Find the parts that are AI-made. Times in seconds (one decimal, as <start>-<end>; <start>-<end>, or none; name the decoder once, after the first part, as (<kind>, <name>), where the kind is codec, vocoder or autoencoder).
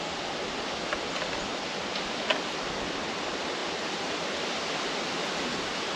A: none